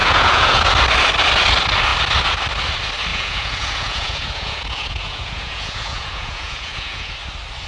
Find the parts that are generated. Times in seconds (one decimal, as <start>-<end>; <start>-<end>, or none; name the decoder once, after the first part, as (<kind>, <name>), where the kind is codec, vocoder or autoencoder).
0.0-0.7 (vocoder, Vocos); 3.1-7.1